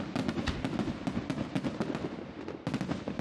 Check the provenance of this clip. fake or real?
real